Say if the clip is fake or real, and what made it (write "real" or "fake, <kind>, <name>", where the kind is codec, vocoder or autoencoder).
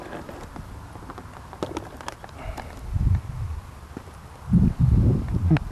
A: real